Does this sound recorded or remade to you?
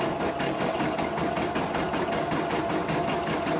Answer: recorded